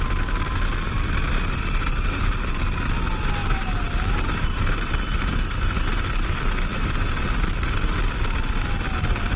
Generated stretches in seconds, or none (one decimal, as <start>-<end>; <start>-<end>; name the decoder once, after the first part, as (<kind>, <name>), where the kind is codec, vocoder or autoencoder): 3.4-4.8 (vocoder, BigVGAN v2); 6.7-7.2